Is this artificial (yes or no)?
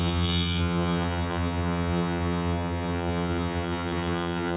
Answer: yes